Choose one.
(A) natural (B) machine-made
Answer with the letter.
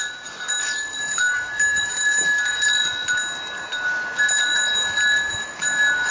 A